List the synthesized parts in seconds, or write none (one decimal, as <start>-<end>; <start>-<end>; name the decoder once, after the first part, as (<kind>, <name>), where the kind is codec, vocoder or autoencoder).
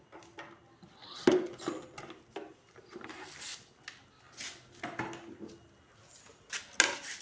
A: none